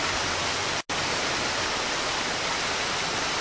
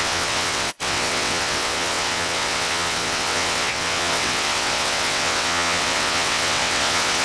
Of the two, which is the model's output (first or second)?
second